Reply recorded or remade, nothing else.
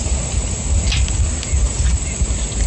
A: recorded